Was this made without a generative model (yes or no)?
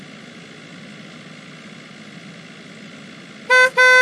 yes